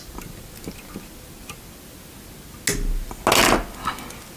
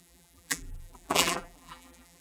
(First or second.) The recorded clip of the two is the first